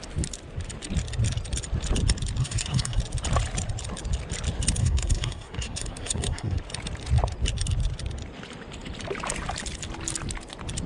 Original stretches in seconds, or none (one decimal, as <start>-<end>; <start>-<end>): 0.0-2.4; 3.0-4.8; 6.6-10.9